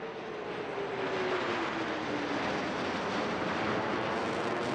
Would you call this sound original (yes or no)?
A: yes